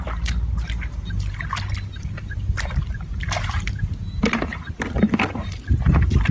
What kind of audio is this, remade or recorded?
recorded